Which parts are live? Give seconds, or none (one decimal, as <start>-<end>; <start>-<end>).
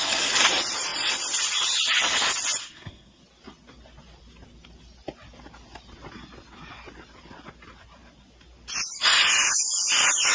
0.0-2.6; 3.2-10.3